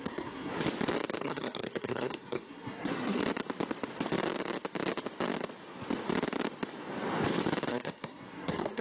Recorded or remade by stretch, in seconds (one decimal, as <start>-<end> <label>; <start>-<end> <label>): 0.0-0.5 remade; 0.5-1.2 recorded; 1.2-3.2 remade; 3.2-7.7 recorded; 7.7-8.8 remade